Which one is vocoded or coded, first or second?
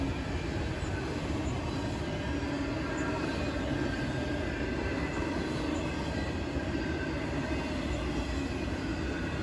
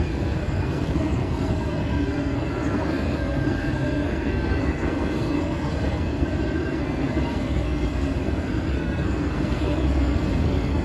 second